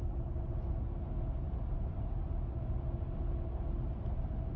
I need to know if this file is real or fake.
real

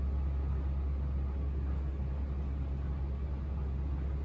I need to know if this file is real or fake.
real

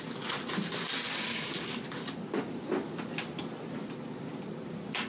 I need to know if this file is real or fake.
real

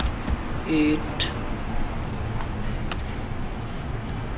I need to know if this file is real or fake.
real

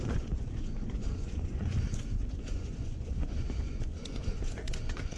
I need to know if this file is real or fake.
fake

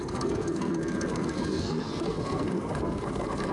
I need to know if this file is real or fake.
fake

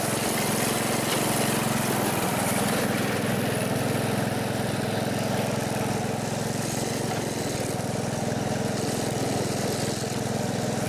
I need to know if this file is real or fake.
real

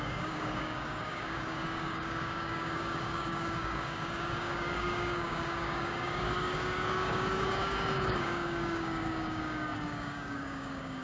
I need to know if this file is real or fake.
fake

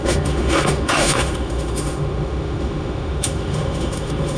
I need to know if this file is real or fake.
fake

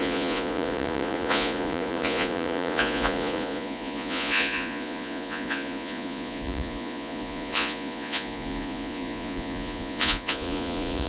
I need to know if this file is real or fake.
fake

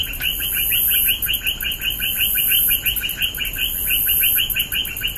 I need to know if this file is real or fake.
real